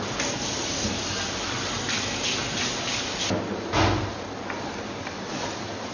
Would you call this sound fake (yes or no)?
no